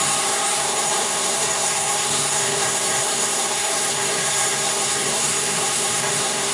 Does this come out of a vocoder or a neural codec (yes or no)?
yes